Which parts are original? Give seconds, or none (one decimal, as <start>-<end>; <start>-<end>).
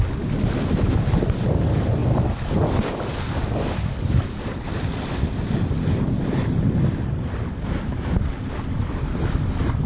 0.0-9.9